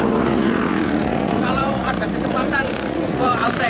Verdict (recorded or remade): remade